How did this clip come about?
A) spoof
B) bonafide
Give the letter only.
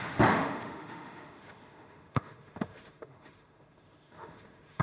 A